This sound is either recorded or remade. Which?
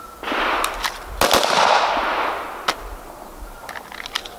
recorded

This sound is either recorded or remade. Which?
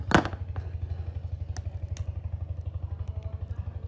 recorded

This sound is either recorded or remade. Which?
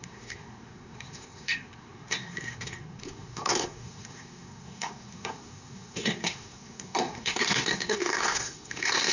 remade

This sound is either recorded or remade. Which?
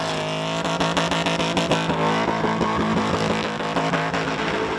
recorded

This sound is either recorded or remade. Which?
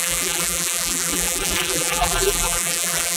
remade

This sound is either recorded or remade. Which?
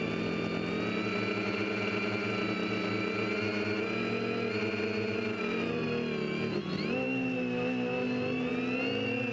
recorded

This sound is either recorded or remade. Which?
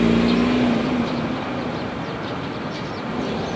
recorded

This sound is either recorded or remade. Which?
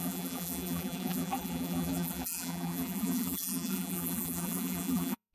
remade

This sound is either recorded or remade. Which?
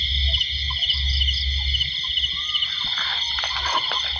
recorded